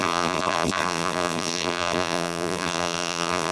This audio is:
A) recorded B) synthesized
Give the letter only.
B